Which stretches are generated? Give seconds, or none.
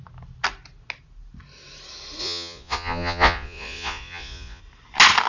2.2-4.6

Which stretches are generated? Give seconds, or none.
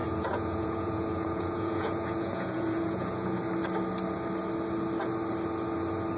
0.0-3.4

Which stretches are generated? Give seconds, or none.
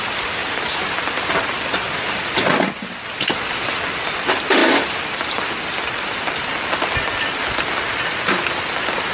none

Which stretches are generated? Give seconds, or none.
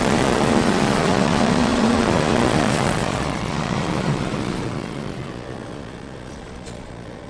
0.0-7.3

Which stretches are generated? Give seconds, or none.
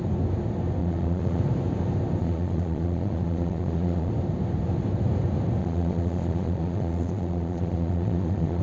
0.8-1.4; 2.2-4.1; 5.6-8.6